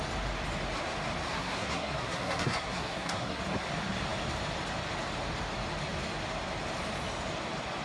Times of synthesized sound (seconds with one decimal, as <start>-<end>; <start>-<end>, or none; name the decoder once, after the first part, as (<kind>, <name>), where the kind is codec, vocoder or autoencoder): 1.3-3.4 (codec, SNAC)

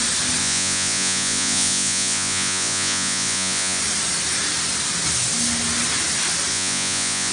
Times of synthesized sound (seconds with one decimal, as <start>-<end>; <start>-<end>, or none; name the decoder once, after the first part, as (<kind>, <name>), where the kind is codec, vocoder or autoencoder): 0.4-3.8 (vocoder, Vocos); 6.5-7.3

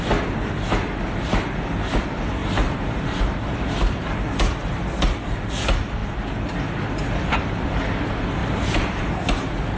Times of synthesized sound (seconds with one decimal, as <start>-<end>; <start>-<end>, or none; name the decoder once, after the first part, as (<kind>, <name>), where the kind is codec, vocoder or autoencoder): 2.4-4.1 (vocoder, BigVGAN v2); 8.4-9.0

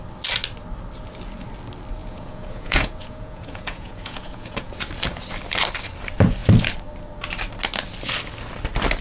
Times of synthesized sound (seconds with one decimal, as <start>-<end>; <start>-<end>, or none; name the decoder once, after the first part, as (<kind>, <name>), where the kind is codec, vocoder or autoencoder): 2.0-4.7 (vocoder, Vocos)

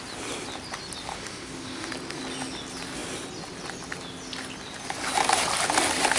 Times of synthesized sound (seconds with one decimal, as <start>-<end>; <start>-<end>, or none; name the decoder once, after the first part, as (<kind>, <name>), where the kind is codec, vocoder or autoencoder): 1.1-1.9 (autoencoder, DAC-VAE)

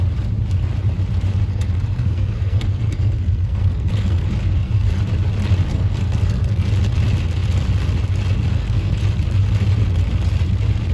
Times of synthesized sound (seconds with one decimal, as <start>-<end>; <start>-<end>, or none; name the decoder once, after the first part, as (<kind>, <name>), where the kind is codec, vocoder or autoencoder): 1.5-5.0 (codec, SNAC); 5.7-6.7; 8.5-9.0

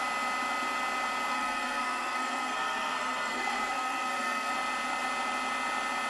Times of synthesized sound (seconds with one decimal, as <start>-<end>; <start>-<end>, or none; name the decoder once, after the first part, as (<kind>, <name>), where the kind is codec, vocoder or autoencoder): 1.3-4.5 (codec, SNAC)

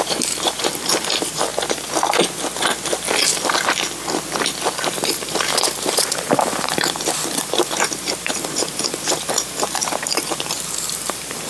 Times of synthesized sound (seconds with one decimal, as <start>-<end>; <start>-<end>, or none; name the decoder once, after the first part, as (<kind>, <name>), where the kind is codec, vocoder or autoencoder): 0.0-1.5 (vocoder, BigVGAN v2); 5.1-11.5